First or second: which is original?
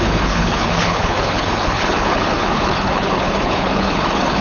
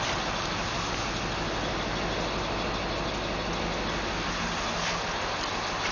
second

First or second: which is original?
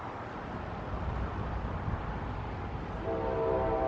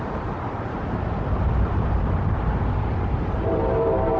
first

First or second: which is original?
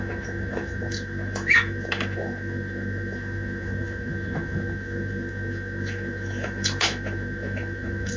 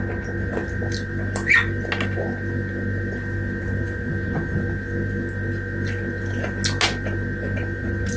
second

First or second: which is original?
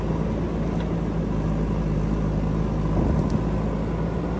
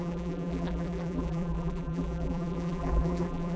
first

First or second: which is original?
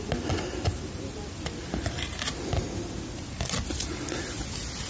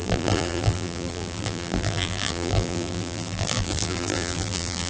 first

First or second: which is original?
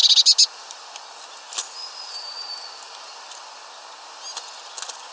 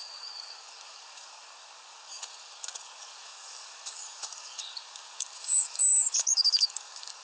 first